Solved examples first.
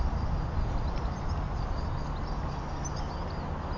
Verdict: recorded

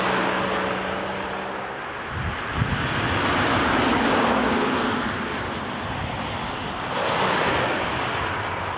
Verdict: recorded